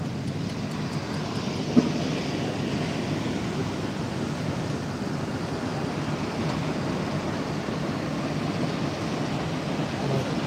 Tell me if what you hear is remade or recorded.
recorded